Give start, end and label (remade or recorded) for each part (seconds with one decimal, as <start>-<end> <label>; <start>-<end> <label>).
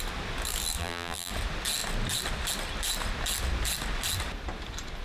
0.0-0.8 recorded; 0.8-1.3 remade; 1.3-5.0 recorded